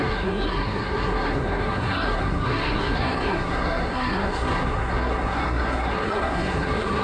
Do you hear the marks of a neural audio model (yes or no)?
yes